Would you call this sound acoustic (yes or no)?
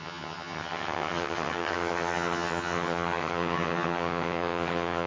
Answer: no